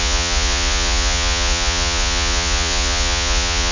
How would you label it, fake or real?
fake